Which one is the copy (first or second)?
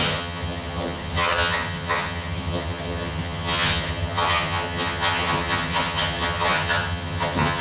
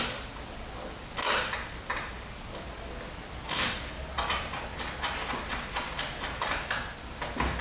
first